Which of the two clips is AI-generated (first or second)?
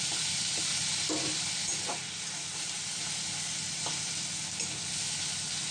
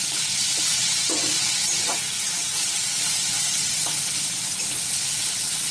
second